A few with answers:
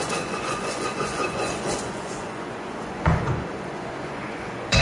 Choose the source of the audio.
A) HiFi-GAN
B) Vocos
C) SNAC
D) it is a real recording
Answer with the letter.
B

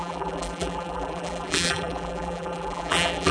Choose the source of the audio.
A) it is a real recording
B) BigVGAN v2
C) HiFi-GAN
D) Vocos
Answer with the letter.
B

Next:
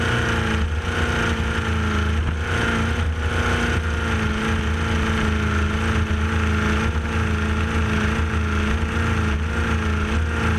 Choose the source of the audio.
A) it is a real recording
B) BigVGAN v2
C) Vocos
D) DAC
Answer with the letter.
A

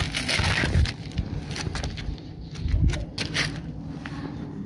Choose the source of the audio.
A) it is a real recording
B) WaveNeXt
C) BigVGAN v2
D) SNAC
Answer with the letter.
A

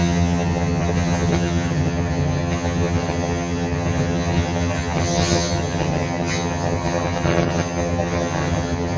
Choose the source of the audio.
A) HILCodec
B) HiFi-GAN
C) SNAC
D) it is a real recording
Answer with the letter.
B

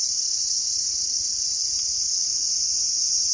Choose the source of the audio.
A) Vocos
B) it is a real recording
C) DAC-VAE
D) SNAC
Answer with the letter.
B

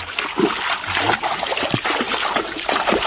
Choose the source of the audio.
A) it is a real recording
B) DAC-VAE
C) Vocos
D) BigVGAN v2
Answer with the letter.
A